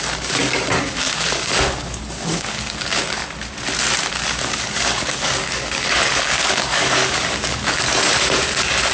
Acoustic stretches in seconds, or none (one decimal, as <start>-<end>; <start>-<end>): 3.2-4.1